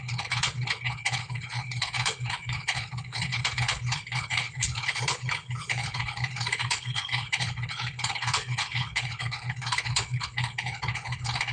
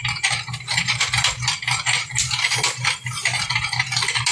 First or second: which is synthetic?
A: first